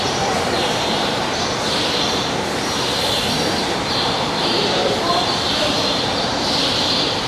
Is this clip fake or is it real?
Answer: fake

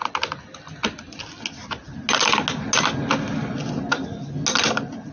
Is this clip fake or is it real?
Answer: real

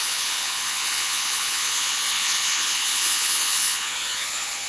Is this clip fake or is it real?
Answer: fake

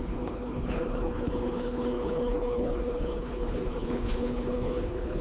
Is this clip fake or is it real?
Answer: fake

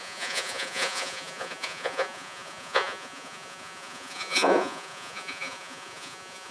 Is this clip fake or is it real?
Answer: fake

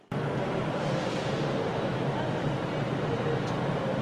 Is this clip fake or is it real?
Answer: real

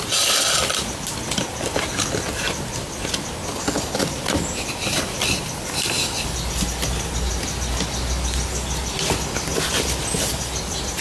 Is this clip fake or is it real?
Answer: real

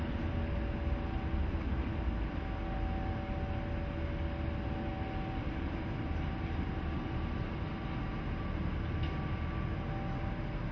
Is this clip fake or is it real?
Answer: real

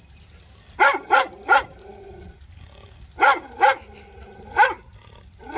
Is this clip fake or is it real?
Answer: real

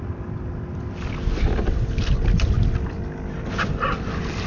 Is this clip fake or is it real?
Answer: real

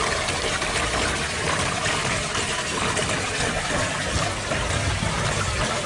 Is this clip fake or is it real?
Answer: real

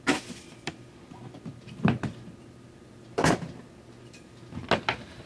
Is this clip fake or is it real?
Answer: real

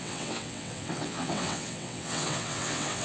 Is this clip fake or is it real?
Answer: fake